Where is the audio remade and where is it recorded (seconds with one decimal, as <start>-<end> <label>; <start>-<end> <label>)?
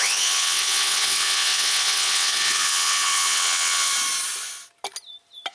0.0-3.9 remade; 3.9-5.5 recorded